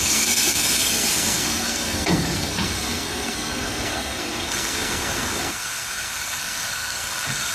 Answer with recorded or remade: remade